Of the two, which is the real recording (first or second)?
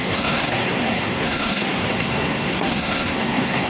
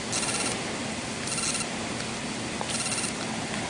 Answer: second